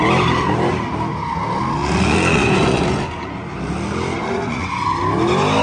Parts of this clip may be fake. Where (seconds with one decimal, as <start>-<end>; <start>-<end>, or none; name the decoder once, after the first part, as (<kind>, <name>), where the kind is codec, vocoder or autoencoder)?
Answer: 1.8-3.1 (vocoder, Vocos); 4.2-4.8

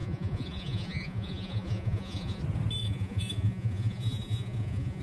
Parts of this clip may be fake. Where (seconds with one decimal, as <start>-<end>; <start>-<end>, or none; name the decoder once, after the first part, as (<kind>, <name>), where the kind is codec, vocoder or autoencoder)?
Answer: 0.0-2.4 (vocoder, Vocos); 2.8-5.0

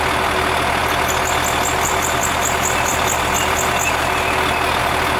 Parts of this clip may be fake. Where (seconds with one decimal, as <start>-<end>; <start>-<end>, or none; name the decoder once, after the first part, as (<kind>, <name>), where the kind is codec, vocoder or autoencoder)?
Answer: none

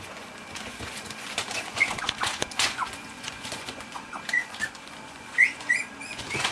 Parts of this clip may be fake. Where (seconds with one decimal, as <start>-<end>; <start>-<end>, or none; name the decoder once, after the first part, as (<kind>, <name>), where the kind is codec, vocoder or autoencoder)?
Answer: 0.0-6.5 (vocoder, Vocos)

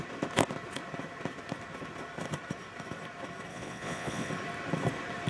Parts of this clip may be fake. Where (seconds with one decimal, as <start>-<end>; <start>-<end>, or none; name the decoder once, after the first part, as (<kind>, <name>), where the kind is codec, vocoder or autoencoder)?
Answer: 3.5-4.3 (vocoder, Vocos)

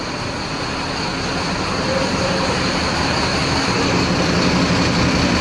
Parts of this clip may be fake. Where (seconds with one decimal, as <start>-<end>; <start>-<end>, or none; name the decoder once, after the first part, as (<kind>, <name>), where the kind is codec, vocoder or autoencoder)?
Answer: none

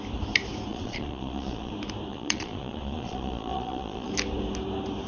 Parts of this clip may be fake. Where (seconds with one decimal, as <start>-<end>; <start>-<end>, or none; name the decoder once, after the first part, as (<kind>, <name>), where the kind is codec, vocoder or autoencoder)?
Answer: 0.7-1.7 (vocoder, Vocos); 2.1-4.1